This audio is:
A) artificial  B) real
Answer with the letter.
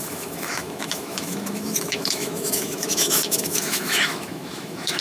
A